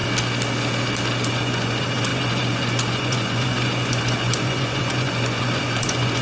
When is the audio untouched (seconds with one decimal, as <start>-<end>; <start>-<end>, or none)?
0.0-1.2